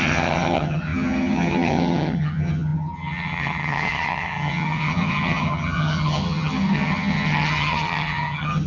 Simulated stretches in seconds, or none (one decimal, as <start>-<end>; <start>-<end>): 0.0-8.7